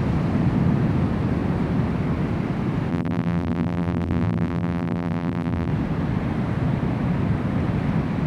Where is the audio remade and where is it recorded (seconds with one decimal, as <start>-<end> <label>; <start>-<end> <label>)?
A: 0.0-2.9 recorded; 2.9-5.7 remade; 5.7-8.3 recorded